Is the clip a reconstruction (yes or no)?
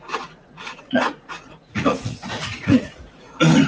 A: yes